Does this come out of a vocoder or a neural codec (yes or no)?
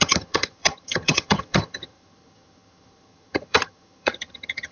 yes